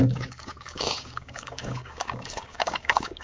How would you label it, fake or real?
fake